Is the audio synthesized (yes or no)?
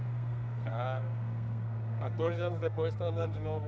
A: yes